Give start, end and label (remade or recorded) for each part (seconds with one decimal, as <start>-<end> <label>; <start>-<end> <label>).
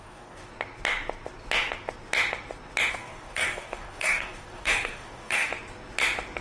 0.0-0.5 remade; 0.5-2.9 recorded; 2.9-5.5 remade; 5.5-6.4 recorded